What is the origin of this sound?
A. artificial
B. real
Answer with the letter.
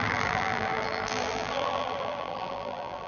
A